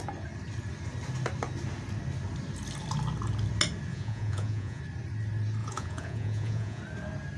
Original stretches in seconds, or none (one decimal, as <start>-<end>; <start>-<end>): 0.0-3.9; 4.8-5.6; 6.8-7.4